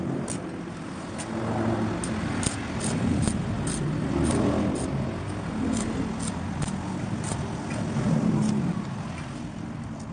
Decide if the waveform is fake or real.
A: real